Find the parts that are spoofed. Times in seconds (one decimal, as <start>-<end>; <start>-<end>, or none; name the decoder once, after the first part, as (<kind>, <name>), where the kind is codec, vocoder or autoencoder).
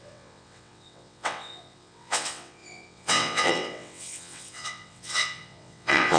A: 0.0-6.2 (vocoder, WaveNeXt)